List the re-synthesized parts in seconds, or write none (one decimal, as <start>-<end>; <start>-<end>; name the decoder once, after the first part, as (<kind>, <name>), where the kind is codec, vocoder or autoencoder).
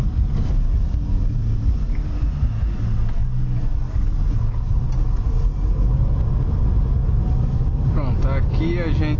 none